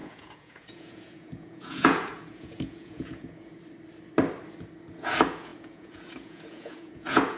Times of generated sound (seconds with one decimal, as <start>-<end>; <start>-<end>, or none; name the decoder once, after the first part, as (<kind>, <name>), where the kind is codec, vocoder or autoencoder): 0.0-3.5 (vocoder, Vocos); 5.0-7.4